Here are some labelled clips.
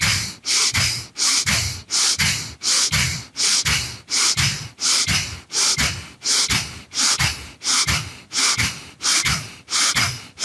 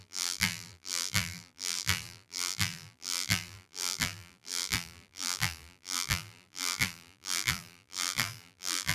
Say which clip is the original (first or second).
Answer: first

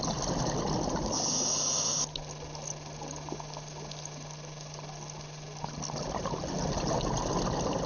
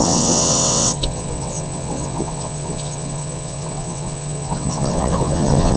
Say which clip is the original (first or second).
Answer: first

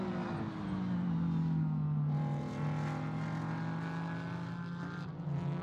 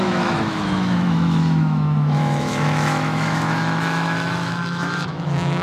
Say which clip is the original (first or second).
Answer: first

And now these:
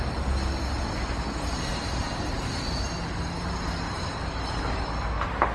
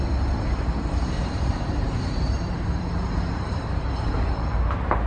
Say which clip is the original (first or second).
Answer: first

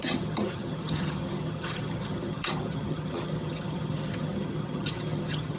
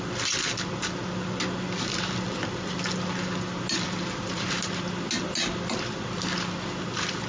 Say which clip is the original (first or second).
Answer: second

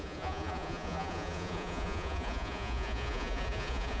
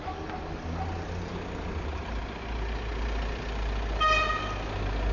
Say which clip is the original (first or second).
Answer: second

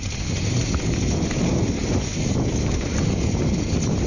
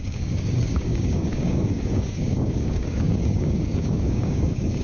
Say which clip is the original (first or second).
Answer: first